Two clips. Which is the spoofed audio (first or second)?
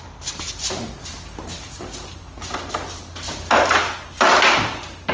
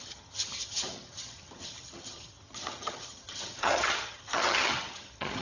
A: second